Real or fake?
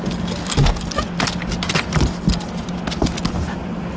real